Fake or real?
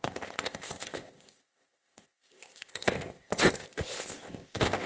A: fake